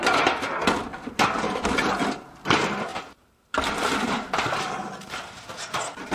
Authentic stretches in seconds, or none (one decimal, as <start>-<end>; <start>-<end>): 0.0-2.9; 4.5-6.1

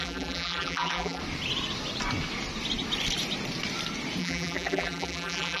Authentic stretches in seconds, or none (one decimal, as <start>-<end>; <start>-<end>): 1.2-4.2

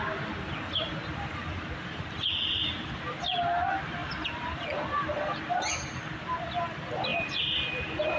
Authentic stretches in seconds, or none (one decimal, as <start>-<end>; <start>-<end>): 0.0-4.0; 6.3-7.1

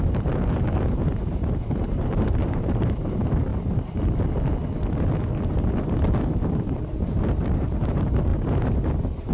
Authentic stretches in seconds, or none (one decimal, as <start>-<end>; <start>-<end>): 3.5-6.6